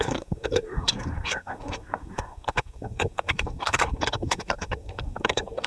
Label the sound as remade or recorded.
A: remade